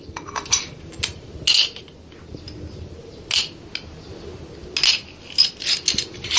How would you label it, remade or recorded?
recorded